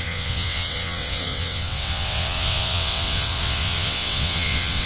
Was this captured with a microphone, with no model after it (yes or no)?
no